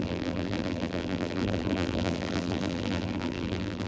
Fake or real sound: fake